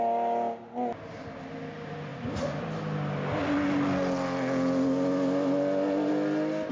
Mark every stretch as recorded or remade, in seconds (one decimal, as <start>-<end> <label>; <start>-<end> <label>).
0.0-6.7 recorded